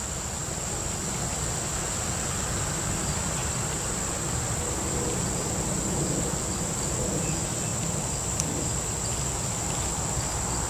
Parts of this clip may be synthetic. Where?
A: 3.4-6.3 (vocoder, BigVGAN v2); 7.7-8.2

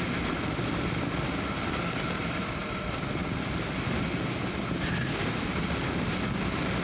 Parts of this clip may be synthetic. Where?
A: none

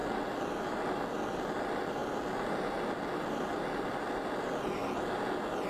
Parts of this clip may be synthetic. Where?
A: none

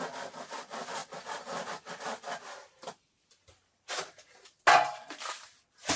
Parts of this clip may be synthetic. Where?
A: 1.0-1.9 (vocoder, BigVGAN v2)